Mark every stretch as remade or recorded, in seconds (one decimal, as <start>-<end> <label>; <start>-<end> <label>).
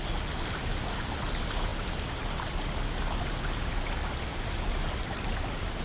0.0-5.8 recorded